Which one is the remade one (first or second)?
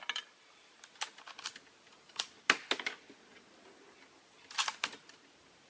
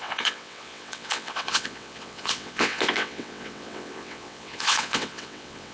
second